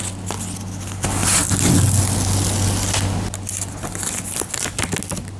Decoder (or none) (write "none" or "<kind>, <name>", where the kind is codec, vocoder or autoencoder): none